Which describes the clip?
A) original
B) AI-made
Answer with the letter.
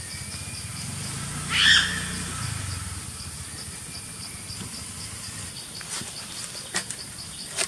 A